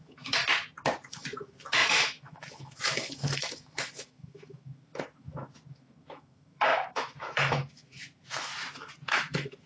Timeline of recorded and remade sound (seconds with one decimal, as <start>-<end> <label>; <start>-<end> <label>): 0.0-0.4 remade; 0.4-1.0 recorded; 1.0-8.5 remade; 8.5-9.1 recorded; 9.1-9.7 remade